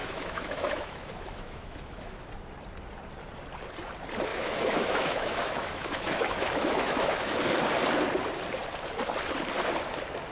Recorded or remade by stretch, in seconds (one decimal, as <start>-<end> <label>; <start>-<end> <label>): 0.0-2.3 remade; 2.3-4.3 recorded; 4.3-7.4 remade; 7.4-10.3 recorded